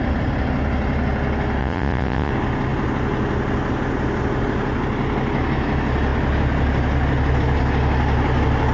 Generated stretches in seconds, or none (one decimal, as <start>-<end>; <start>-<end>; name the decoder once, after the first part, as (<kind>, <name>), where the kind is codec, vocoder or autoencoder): 1.6-2.3 (vocoder, Vocos)